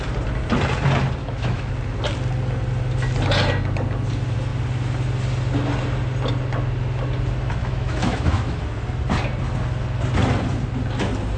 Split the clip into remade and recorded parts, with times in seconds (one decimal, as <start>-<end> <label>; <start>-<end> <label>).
0.0-1.2 recorded; 1.2-1.7 remade; 1.7-7.6 recorded; 7.6-8.6 remade; 8.6-11.4 recorded